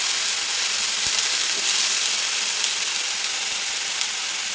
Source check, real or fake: real